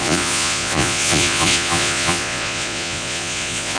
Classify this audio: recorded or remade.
remade